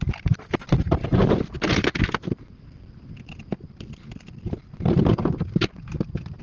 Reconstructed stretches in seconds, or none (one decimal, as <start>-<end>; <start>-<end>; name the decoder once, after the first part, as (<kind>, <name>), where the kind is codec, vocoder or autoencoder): none